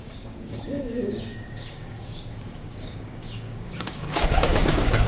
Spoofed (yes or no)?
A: yes